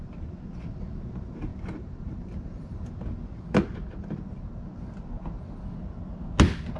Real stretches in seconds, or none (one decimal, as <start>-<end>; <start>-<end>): 0.0-1.5; 2.9-6.8